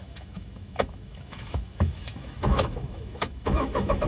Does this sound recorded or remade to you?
remade